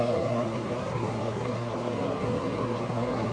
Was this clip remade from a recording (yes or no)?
yes